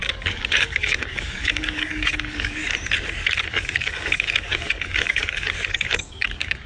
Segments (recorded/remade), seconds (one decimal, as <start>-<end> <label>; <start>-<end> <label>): 0.0-2.6 remade; 2.6-3.5 recorded; 3.5-6.7 remade